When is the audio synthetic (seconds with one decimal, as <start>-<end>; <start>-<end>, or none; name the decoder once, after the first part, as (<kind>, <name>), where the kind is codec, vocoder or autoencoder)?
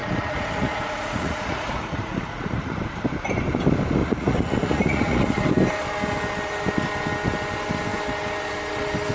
0.0-2.8 (vocoder, Vocos); 4.0-5.4